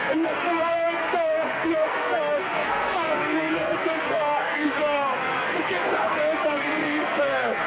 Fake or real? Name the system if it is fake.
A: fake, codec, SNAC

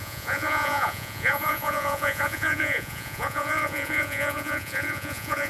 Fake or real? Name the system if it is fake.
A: fake, vocoder, Vocos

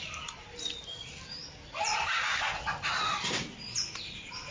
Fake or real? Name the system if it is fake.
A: real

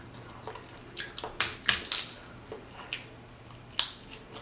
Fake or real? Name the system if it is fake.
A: real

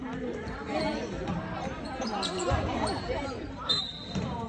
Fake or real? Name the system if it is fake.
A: fake, vocoder, BigVGAN v2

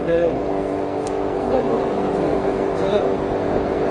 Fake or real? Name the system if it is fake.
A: fake, codec, SNAC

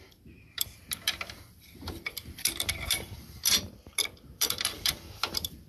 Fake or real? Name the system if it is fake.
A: fake, vocoder, BigVGAN v2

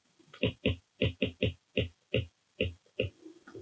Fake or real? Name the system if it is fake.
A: real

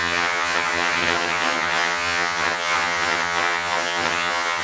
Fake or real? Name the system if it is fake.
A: fake, vocoder, HiFi-GAN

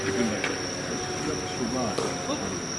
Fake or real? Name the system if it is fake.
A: real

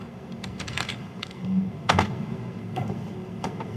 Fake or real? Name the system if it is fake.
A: fake, codec, SNAC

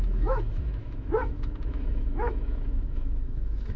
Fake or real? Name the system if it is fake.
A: fake, autoencoder, DAC-VAE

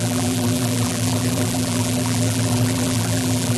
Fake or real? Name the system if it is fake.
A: fake, vocoder, BigVGAN v2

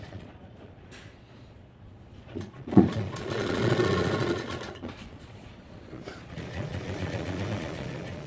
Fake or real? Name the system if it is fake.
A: fake, vocoder, Vocos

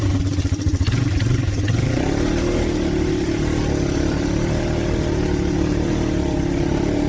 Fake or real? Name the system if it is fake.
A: real